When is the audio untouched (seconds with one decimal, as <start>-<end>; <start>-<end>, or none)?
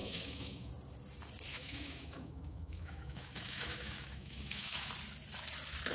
0.7-1.5; 4.9-5.9